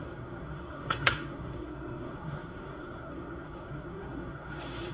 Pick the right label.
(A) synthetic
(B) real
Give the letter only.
A